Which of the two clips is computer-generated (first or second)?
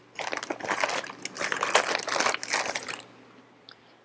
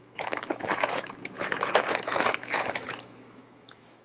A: second